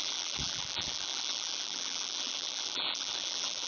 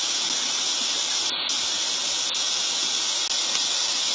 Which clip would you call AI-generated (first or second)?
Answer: first